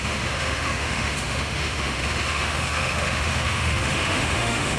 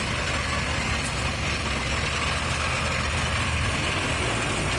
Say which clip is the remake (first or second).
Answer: first